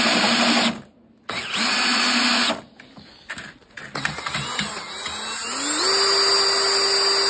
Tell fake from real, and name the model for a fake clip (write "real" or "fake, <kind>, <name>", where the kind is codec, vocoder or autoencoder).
real